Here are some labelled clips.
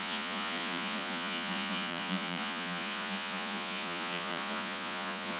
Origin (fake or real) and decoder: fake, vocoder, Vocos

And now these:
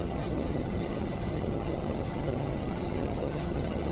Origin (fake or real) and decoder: fake, vocoder, HiFi-GAN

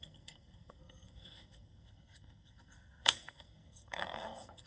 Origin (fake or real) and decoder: fake, codec, SNAC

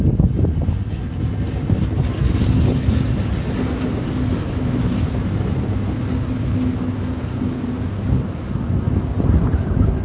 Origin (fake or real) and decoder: real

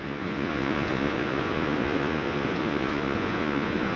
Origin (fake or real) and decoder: fake, vocoder, Vocos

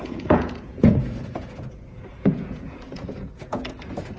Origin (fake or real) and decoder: fake, vocoder, Vocos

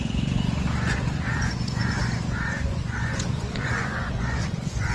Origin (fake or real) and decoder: fake, vocoder, Vocos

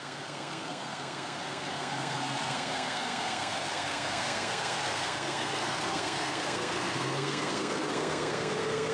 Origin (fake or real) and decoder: fake, codec, SNAC